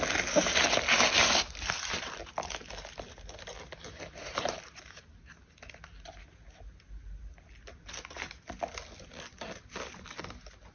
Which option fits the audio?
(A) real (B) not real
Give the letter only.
A